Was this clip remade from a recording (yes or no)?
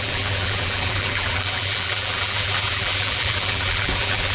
yes